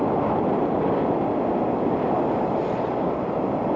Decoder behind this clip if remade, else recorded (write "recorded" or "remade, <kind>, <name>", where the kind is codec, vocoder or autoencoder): recorded